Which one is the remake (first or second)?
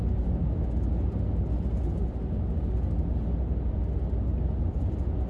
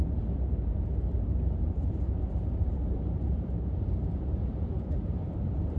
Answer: second